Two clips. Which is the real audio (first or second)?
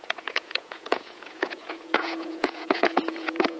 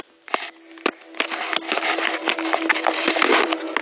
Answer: second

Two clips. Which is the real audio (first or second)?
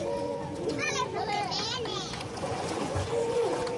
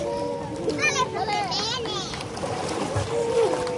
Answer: second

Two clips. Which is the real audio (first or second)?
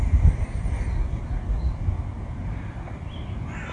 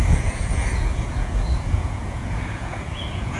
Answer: first